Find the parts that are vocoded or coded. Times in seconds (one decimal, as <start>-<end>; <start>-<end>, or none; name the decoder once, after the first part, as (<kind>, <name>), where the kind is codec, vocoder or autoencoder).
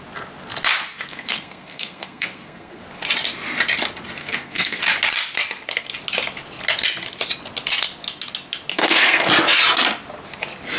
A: 0.9-2.8 (codec, SNAC); 4.2-4.8; 8.7-9.3